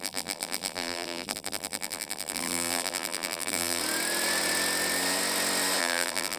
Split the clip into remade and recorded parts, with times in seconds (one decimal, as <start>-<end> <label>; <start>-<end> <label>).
0.0-3.8 remade; 3.8-5.8 recorded; 5.8-6.4 remade